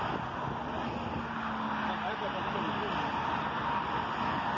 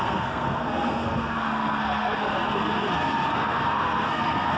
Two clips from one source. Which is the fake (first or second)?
second